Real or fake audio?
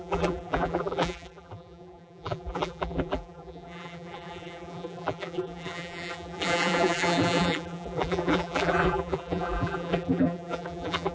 fake